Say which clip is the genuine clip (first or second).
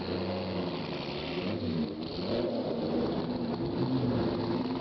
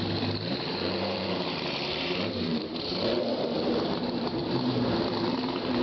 first